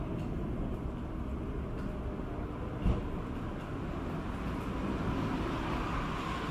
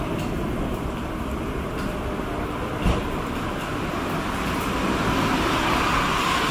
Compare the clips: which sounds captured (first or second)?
first